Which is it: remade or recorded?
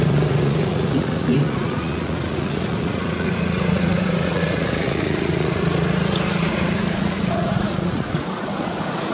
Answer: remade